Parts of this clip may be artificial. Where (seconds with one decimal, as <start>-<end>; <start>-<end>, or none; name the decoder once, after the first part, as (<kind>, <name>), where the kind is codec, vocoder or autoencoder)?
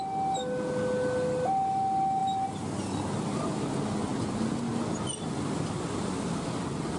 none